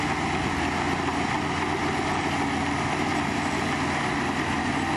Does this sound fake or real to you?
real